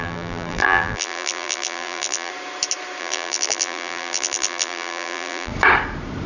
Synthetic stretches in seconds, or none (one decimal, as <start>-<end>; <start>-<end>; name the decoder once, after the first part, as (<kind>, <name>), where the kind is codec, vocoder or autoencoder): 0.0-2.3 (vocoder, BigVGAN v2); 3.0-5.5